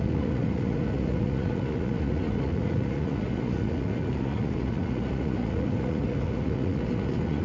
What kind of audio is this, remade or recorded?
remade